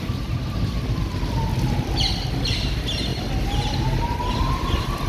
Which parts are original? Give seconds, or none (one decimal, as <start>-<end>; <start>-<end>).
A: 0.0-5.1